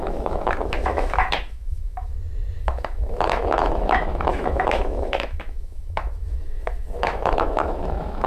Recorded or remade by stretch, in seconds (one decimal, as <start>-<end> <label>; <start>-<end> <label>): 0.0-2.1 remade; 2.1-2.6 recorded; 2.6-8.3 remade